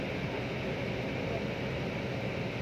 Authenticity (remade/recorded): recorded